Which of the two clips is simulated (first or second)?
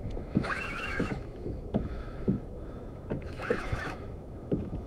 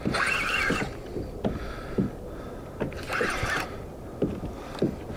first